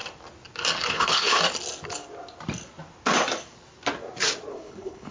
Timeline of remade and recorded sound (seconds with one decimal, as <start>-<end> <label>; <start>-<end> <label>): 0.0-0.9 recorded; 0.9-1.4 remade; 1.4-4.5 recorded; 4.5-5.1 remade